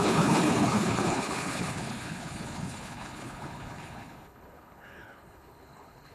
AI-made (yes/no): yes